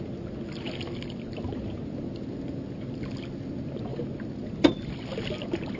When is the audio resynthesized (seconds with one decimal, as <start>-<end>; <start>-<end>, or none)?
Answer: none